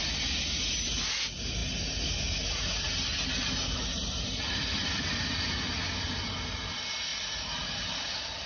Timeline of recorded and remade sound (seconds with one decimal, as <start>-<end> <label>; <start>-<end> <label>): 0.0-8.5 recorded